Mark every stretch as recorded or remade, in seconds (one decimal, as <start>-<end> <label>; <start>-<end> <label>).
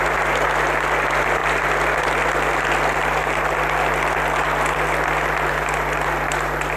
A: 0.0-6.8 recorded